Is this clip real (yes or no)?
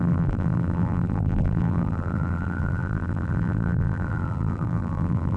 no